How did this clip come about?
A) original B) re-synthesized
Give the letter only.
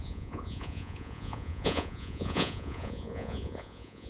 B